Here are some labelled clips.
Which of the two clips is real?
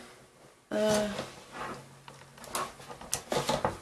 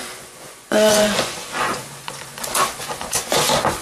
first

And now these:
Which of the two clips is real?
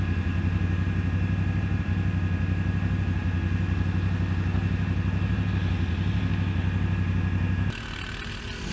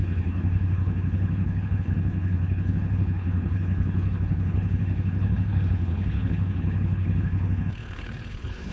first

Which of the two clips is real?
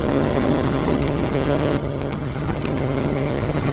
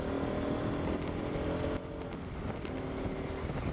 second